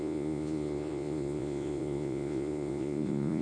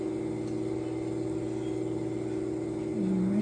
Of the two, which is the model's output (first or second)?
first